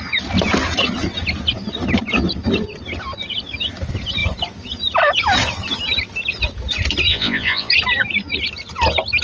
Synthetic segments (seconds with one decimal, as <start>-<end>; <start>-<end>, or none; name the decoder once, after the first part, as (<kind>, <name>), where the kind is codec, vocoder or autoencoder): 7.1-7.7 (vocoder, Vocos)